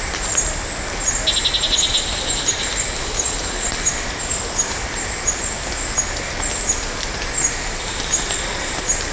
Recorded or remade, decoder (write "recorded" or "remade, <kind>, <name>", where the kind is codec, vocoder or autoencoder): recorded